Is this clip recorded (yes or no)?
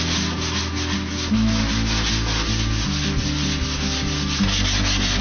yes